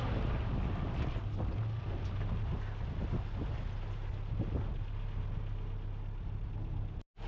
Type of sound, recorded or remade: recorded